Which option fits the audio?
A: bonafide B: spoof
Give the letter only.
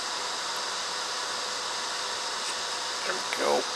A